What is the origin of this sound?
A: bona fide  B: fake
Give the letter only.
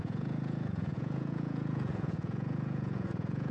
B